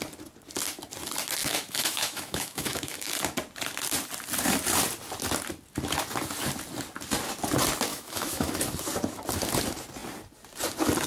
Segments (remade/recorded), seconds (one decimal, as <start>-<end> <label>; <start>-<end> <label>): 0.0-1.4 recorded; 1.4-3.1 remade; 3.1-7.9 recorded; 7.9-8.5 remade; 8.5-11.1 recorded

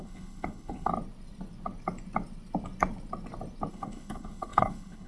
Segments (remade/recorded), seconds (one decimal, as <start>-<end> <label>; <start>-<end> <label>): 0.0-0.9 remade; 0.9-3.7 recorded; 3.7-5.1 remade

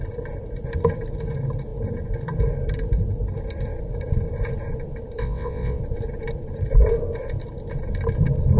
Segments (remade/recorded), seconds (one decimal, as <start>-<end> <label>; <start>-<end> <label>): 0.0-5.2 recorded; 5.2-5.8 remade; 5.8-8.6 recorded

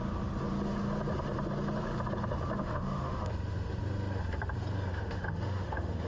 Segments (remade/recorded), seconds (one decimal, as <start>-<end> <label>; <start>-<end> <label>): 0.0-2.6 recorded; 2.6-3.3 remade; 3.3-4.9 recorded; 4.9-6.1 remade

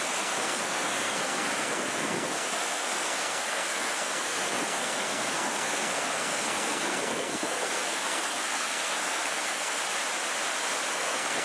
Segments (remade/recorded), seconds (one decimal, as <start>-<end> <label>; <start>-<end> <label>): 0.0-9.8 remade; 9.8-10.9 recorded; 10.9-11.4 remade

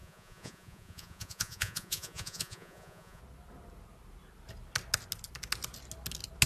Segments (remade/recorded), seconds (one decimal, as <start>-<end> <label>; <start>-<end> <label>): 0.0-3.2 remade; 3.2-6.5 recorded